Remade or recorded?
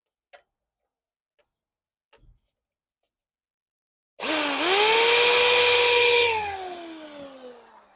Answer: recorded